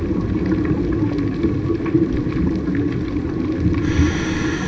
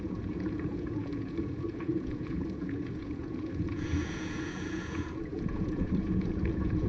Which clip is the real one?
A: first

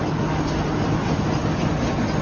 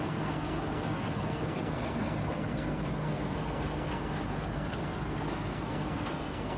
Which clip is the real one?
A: first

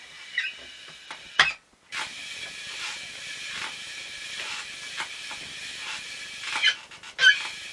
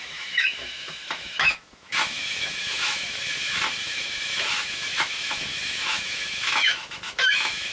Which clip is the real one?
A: first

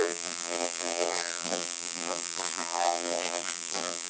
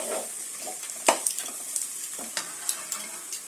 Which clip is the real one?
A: second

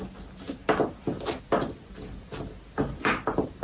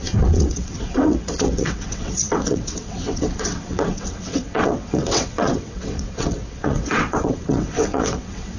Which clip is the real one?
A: first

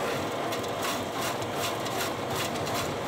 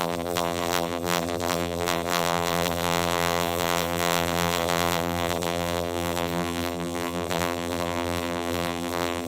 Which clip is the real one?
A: first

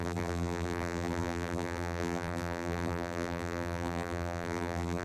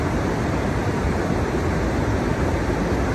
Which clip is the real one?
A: second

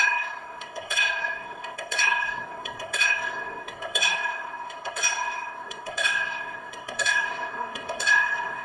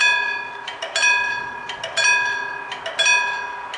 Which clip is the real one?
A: second